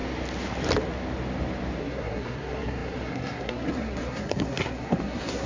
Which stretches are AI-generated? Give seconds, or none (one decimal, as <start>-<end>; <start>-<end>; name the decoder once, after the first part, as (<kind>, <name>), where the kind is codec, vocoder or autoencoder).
1.8-5.5 (codec, SNAC)